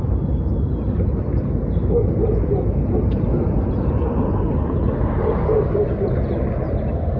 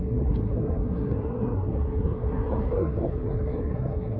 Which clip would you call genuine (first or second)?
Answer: first